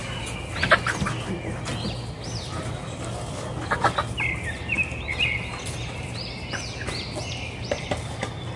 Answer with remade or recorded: recorded